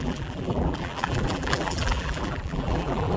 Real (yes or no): no